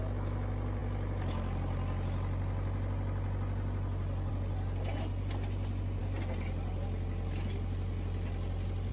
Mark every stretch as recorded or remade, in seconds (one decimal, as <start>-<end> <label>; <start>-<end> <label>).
0.0-8.9 recorded